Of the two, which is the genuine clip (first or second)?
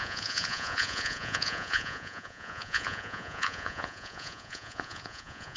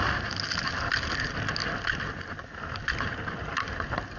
second